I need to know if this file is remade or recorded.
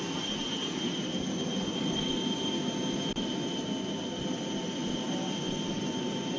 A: recorded